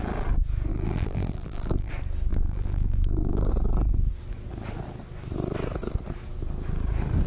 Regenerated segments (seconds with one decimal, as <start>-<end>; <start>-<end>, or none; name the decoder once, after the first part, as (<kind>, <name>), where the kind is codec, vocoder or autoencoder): 0.7-1.9 (vocoder, BigVGAN v2); 2.3-3.5